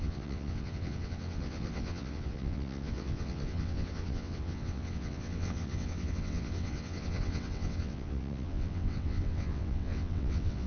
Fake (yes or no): yes